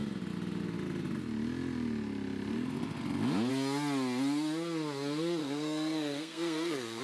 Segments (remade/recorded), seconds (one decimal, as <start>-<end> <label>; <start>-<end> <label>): 0.0-5.4 recorded; 5.4-7.0 remade

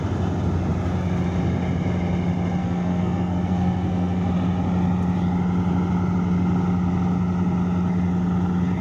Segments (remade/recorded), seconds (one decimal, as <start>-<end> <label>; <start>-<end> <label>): 0.0-2.6 recorded; 2.6-4.3 remade; 4.3-8.8 recorded

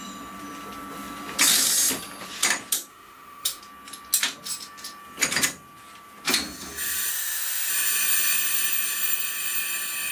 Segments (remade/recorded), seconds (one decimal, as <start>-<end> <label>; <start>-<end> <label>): 0.0-2.9 recorded; 2.9-3.6 remade; 3.6-7.1 recorded; 7.1-7.7 remade; 7.7-10.1 recorded